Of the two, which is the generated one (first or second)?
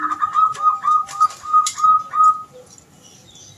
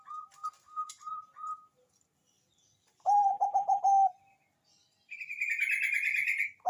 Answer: second